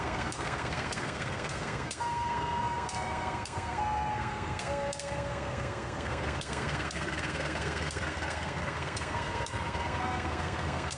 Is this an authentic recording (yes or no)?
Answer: no